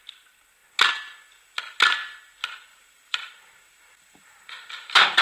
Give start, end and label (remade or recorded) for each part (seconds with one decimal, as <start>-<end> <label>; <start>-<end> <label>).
0.0-2.7 recorded; 2.7-5.2 remade